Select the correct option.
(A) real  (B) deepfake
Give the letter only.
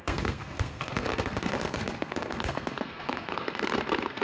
B